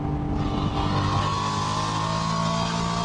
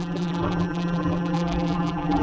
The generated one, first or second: second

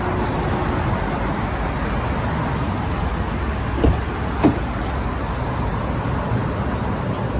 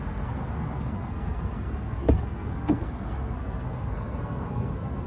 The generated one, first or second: second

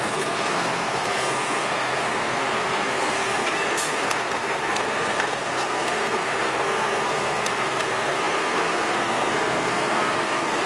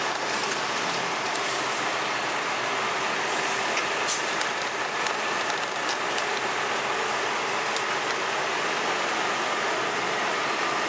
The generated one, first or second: first